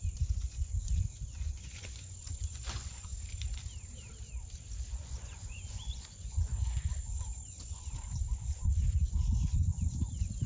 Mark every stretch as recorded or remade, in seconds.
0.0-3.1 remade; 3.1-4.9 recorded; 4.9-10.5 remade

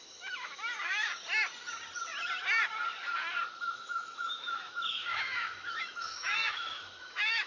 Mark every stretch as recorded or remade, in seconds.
0.0-1.1 remade; 1.1-3.6 recorded; 3.6-7.5 remade

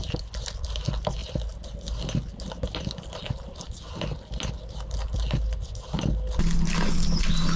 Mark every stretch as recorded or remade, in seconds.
0.0-7.6 recorded

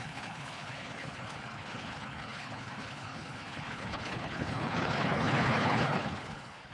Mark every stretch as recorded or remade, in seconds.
0.0-6.7 remade

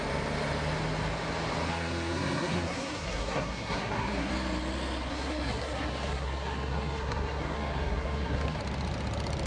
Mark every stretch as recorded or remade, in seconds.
0.0-1.7 recorded; 1.7-4.3 remade; 4.3-5.1 recorded; 5.1-8.6 remade; 8.6-9.5 recorded